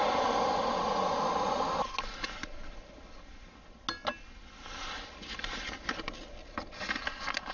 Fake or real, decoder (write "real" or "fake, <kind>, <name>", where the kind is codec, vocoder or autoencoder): real